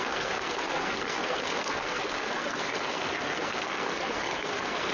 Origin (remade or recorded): remade